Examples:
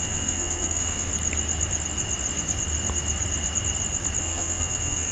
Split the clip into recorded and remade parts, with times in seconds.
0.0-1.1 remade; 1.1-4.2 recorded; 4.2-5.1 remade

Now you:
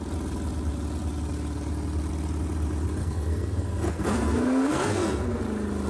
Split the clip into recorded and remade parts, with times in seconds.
0.0-3.0 recorded; 3.0-5.4 remade; 5.4-5.9 recorded